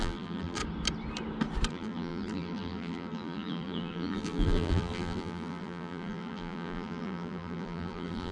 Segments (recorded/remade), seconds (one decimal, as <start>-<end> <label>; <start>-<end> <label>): 0.0-0.6 remade; 0.6-1.7 recorded; 1.7-8.3 remade